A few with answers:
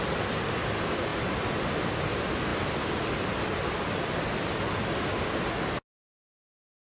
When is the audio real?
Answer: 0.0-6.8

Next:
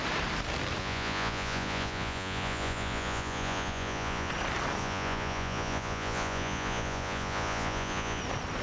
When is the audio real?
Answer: 0.0-0.8; 4.3-4.8; 8.2-8.6

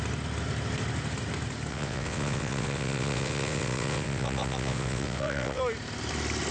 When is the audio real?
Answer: 0.0-1.7; 5.6-6.5

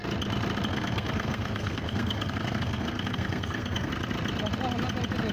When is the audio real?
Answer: 0.0-0.7; 3.9-5.3

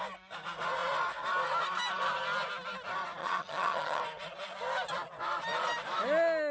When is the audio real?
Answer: 0.0-3.2; 4.0-6.5

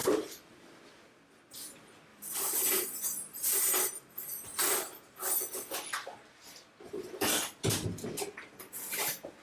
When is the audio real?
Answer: 0.8-2.1; 3.6-9.4

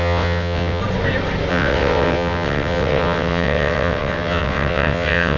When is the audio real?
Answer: 0.8-1.5

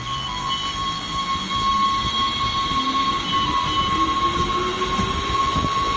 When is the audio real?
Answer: 1.7-5.3